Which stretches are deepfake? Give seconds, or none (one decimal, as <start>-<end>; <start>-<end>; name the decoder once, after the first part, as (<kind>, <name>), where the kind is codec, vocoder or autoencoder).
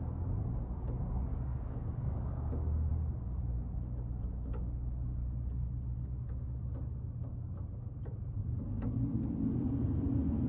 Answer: 1.3-2.5 (codec, DAC)